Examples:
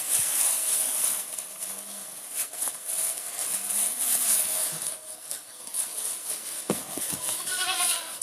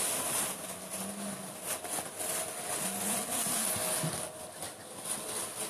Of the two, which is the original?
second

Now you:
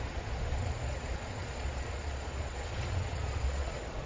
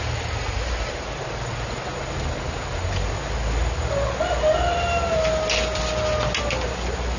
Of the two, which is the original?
second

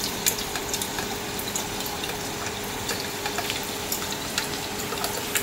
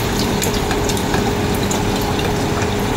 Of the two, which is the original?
second